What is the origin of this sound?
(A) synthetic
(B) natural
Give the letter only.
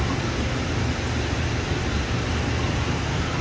B